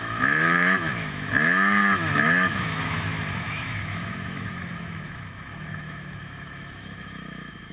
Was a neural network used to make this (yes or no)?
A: yes